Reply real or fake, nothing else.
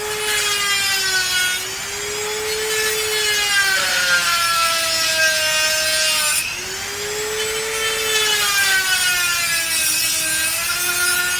real